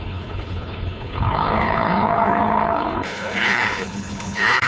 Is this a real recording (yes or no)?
no